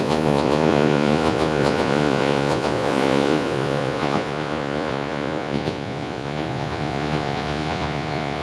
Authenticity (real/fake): fake